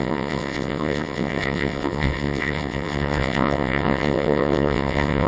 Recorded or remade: remade